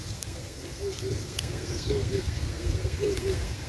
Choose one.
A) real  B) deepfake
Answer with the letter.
B